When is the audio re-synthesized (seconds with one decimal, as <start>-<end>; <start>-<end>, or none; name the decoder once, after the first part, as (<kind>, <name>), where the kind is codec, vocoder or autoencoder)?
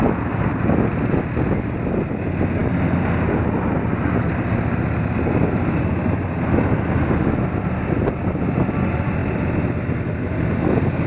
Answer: none